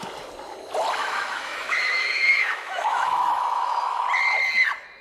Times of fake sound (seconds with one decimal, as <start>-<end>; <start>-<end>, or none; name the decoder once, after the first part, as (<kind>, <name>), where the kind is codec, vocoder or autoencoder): 1.0-4.0 (autoencoder, DAC-VAE)